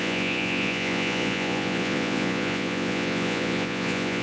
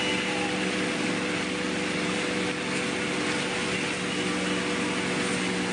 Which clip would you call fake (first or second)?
first